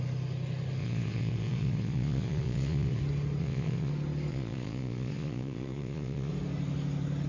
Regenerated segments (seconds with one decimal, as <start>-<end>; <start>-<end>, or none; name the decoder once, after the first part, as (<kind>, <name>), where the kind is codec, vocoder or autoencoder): 0.8-3.0 (vocoder, Vocos); 3.4-3.9; 4.3-6.3